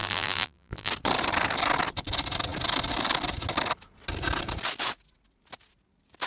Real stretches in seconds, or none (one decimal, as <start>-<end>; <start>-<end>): 0.9-6.3